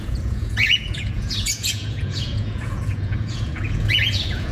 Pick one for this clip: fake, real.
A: fake